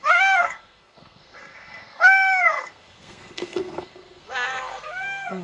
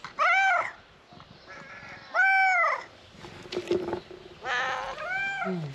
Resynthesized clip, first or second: first